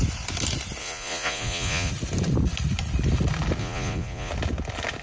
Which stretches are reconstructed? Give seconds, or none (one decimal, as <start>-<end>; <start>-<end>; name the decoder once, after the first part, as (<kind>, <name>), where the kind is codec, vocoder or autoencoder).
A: 0.8-1.9 (vocoder, Vocos); 3.6-4.3